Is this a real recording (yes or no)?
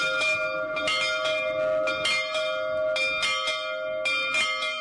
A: yes